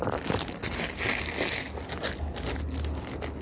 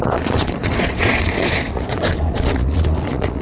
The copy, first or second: second